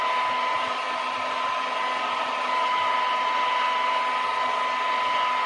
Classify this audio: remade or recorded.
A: recorded